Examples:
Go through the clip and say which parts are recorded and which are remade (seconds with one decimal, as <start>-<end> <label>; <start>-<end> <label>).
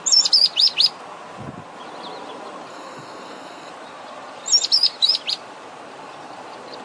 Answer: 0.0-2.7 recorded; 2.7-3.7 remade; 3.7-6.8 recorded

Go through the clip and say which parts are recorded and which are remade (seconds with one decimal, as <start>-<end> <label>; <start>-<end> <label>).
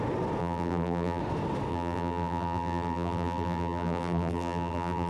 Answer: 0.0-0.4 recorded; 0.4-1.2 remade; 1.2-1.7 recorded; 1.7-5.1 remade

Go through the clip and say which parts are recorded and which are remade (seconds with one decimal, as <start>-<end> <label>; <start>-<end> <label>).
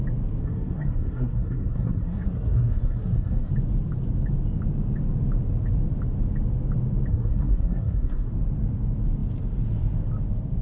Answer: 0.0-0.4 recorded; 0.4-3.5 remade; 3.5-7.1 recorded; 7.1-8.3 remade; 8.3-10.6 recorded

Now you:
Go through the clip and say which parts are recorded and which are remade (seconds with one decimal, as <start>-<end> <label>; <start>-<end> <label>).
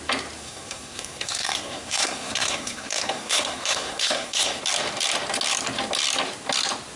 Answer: 0.0-0.4 recorded; 0.4-4.6 remade; 4.6-7.0 recorded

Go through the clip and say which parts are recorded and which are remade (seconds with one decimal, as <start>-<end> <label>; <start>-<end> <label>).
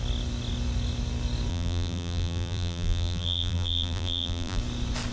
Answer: 0.0-1.5 recorded; 1.5-4.6 remade; 4.6-5.1 recorded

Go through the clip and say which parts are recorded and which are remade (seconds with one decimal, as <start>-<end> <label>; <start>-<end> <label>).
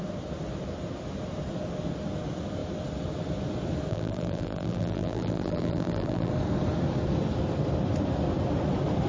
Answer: 0.0-3.9 recorded; 3.9-6.3 remade; 6.3-9.1 recorded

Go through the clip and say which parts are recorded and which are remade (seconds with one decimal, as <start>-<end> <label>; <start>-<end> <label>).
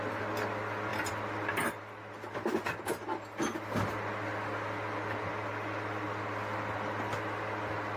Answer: 0.0-8.0 recorded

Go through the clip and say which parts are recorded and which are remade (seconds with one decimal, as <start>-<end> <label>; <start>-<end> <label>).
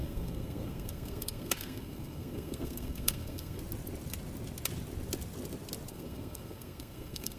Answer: 0.0-3.6 remade; 3.6-5.9 recorded; 5.9-7.4 remade